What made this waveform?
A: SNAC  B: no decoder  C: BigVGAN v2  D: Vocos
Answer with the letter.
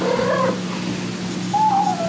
B